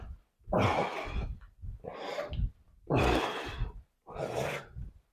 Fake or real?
real